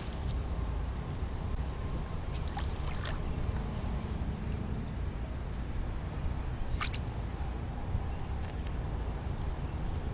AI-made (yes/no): yes